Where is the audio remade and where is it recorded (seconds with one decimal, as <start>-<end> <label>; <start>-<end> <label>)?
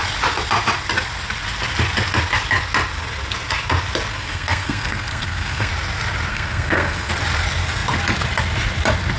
0.0-4.1 recorded; 4.1-5.7 remade; 5.7-6.3 recorded; 6.3-7.1 remade; 7.1-9.2 recorded